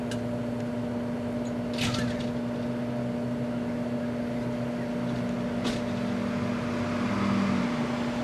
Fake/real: real